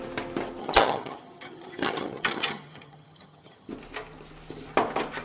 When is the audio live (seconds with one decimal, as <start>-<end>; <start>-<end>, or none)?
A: 0.0-0.6; 3.7-5.2